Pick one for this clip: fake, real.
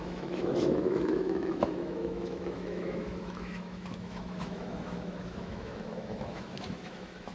fake